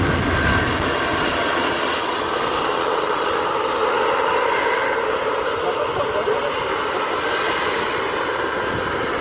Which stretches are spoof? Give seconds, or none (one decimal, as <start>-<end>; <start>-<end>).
0.0-3.8